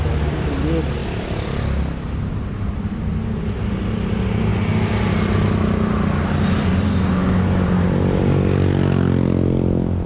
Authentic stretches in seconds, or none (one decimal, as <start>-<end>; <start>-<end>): 0.0-10.1